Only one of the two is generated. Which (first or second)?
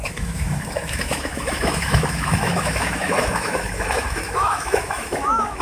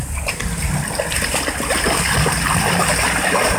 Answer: first